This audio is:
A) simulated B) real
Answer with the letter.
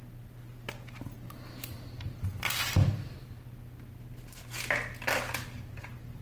B